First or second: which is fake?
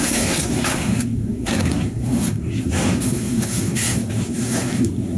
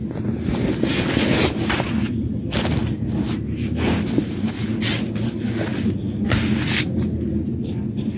first